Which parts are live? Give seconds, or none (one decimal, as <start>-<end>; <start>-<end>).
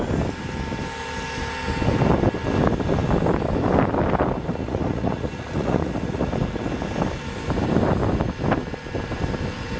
0.0-4.5; 6.3-9.8